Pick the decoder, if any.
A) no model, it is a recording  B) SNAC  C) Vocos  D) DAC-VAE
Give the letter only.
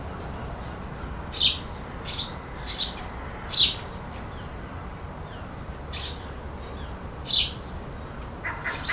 A